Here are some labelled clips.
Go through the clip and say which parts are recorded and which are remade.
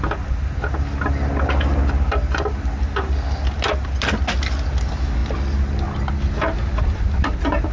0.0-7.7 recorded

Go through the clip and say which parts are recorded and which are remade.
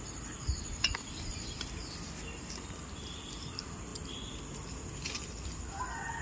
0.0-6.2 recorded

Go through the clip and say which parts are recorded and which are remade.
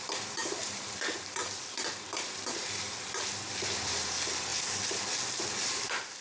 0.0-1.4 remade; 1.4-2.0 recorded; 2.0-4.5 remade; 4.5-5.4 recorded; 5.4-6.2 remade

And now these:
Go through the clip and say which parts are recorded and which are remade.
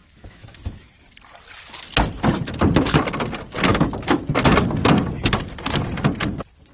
0.0-0.9 remade; 0.9-3.7 recorded; 3.7-4.2 remade; 4.2-6.7 recorded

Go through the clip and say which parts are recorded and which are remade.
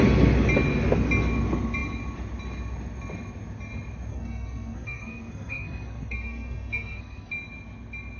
0.0-4.1 recorded; 4.1-7.3 remade; 7.3-8.2 recorded